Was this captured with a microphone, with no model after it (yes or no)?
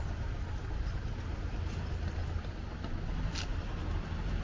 yes